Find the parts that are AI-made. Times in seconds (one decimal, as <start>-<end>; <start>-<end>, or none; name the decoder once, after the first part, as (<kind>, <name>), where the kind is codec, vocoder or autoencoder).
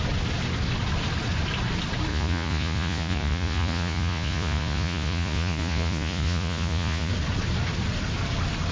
2.1-7.1 (vocoder, Vocos)